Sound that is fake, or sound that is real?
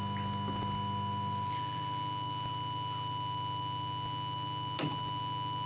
real